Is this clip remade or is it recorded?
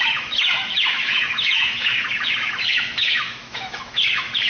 remade